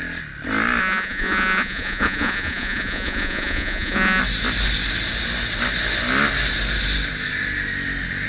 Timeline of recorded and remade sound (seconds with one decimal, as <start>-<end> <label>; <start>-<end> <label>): 0.0-0.8 recorded; 0.8-4.2 remade; 4.2-8.3 recorded